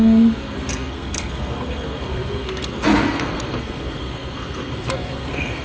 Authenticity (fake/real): fake